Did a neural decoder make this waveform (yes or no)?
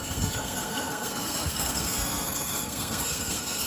yes